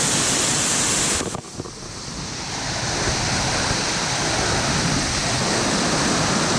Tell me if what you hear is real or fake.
real